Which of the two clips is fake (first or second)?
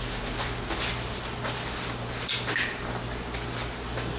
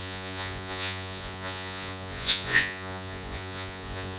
second